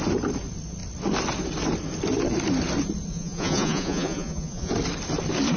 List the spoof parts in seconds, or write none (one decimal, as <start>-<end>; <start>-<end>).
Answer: 3.1-4.7